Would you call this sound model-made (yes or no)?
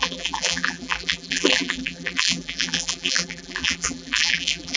yes